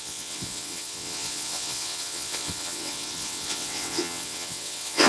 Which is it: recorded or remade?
remade